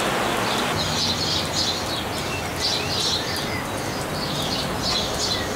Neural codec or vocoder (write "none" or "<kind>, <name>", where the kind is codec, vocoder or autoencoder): none